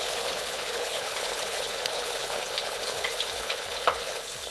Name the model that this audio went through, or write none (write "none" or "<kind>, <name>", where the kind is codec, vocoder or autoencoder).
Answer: codec, HILCodec